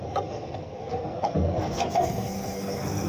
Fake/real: fake